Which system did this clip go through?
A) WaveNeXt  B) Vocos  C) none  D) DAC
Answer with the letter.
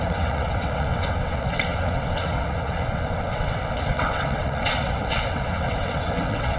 A